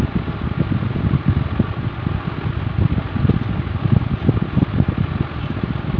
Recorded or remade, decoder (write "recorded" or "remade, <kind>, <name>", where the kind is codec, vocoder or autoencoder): recorded